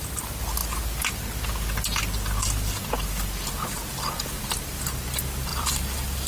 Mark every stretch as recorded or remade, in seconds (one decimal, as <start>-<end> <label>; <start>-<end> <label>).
0.0-5.5 recorded; 5.5-6.3 remade